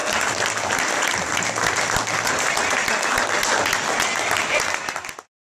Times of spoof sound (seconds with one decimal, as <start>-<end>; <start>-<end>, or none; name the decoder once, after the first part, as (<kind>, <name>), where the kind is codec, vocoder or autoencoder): none